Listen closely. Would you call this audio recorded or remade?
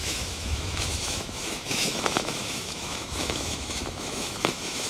remade